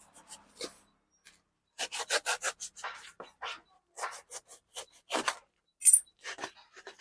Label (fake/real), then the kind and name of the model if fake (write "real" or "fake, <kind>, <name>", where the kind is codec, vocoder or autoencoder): real